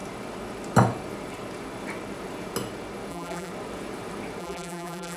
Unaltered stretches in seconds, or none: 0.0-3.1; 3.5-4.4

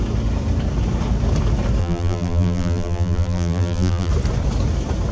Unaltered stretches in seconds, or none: 0.0-1.8; 4.1-5.1

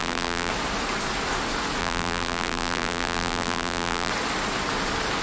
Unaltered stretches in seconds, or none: 0.5-1.8; 4.1-5.2

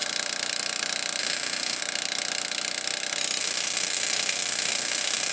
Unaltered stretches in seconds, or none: 0.0-1.2; 1.8-3.4

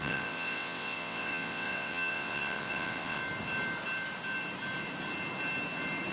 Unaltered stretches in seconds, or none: 3.2-6.1

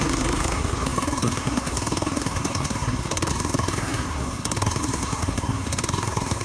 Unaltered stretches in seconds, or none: none

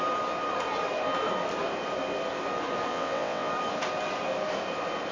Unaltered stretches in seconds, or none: 0.0-2.9; 3.5-5.1